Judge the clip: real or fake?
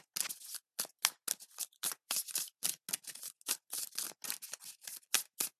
real